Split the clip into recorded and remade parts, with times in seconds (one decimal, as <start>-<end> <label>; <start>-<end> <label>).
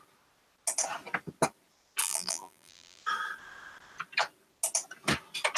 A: 0.0-2.0 recorded; 2.0-3.0 remade; 3.0-5.6 recorded